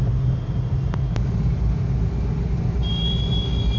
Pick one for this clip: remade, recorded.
recorded